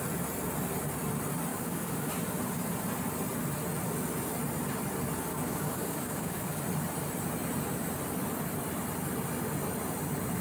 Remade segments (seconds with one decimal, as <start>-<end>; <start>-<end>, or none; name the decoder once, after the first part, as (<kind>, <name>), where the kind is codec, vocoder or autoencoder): 1.5-2.1 (codec, DAC); 5.3-6.6